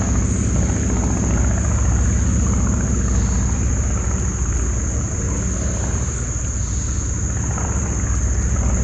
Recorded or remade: recorded